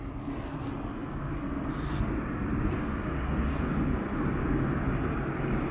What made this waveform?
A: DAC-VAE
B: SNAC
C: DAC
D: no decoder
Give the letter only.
D